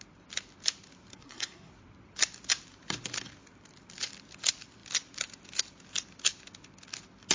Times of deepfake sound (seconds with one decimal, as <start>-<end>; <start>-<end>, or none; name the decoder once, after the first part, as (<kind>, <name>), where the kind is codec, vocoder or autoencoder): 1.1-1.7 (codec, SNAC)